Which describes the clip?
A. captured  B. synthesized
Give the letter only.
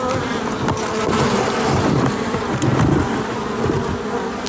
A